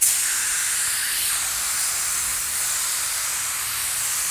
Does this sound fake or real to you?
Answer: real